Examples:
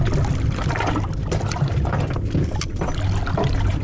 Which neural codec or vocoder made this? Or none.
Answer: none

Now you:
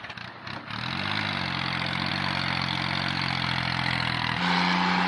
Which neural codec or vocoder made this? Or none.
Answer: none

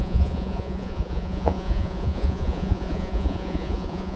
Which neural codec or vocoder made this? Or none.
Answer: vocoder, Vocos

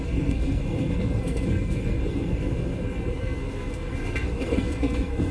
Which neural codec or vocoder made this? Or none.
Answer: codec, SNAC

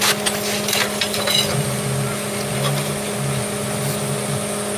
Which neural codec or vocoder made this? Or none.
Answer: none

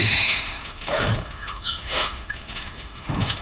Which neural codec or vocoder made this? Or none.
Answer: autoencoder, DAC-VAE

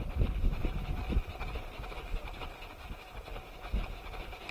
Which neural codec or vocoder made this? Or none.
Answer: none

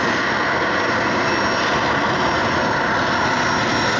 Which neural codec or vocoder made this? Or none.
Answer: none